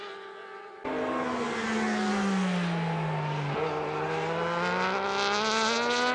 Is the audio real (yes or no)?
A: yes